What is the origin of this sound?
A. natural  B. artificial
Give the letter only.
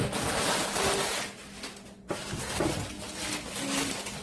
A